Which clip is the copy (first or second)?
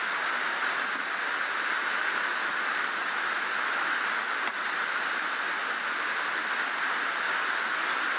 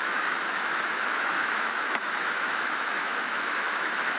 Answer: second